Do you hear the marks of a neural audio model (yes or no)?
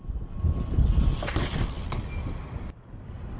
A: no